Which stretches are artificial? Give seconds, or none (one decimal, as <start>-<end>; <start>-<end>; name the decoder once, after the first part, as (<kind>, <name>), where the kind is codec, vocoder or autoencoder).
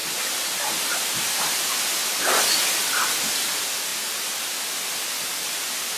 none